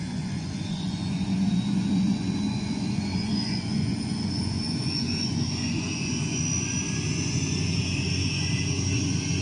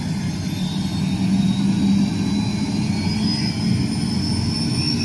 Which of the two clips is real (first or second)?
second